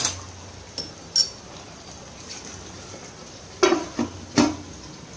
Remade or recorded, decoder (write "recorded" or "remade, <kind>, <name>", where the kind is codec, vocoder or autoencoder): recorded